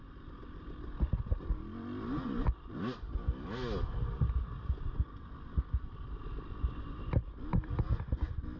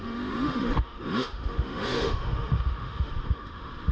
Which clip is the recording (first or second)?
first